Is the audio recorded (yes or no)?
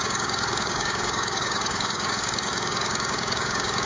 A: no